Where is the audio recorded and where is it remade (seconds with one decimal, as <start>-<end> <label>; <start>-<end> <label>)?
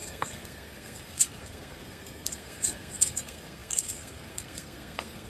0.0-5.3 remade